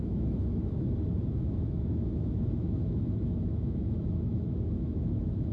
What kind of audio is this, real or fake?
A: fake